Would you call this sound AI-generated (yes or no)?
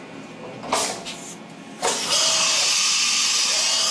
no